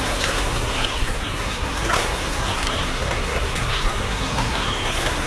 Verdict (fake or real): fake